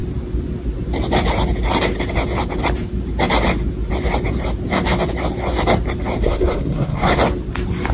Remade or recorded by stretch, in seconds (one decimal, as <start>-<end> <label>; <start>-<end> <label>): 0.0-6.2 recorded; 6.2-7.2 remade; 7.2-7.9 recorded